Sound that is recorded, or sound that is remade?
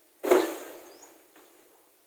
recorded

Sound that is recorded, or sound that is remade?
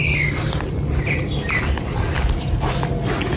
recorded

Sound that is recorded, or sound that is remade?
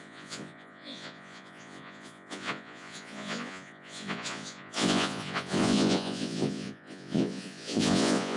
remade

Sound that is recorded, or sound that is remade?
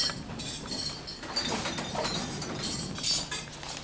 recorded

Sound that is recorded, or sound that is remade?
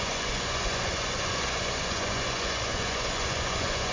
remade